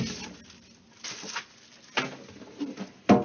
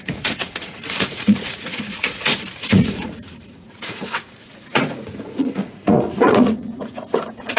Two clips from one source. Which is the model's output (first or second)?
second